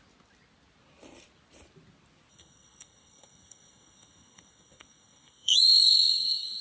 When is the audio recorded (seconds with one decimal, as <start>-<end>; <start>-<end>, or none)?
0.0-2.3